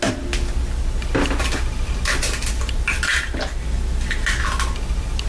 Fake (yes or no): no